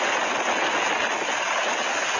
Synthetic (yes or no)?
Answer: no